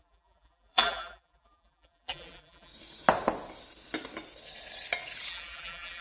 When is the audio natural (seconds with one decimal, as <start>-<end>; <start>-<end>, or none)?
2.7-5.3